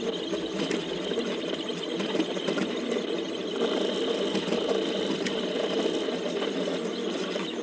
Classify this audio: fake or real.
real